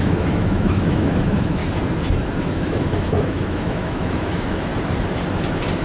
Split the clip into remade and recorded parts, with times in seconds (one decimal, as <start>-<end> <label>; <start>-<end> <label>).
0.0-1.6 remade; 1.6-2.4 recorded; 2.4-4.7 remade; 4.7-5.8 recorded